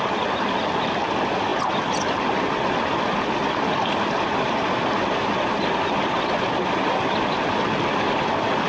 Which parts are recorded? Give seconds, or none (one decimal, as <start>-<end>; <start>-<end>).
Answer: 0.0-8.7